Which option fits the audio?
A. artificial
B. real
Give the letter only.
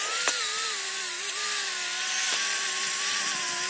B